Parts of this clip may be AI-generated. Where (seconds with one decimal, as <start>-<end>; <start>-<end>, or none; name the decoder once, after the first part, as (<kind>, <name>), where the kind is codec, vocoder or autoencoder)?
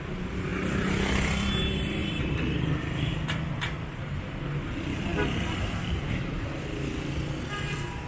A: 2.0-3.1 (vocoder, BigVGAN v2)